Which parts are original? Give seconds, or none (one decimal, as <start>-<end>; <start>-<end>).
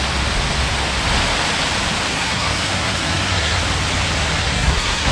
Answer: 0.0-2.1; 3.6-4.4